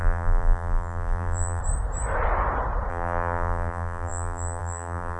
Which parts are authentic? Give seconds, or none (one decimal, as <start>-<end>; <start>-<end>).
1.6-2.9